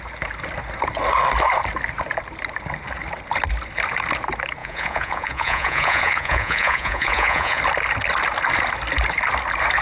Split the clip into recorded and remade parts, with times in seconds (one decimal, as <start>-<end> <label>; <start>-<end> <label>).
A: 0.0-4.6 recorded; 4.6-7.6 remade; 7.6-9.8 recorded